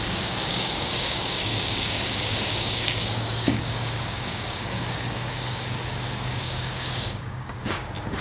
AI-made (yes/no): yes